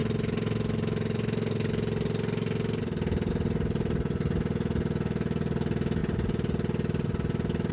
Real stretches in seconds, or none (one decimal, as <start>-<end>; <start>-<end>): 0.0-7.7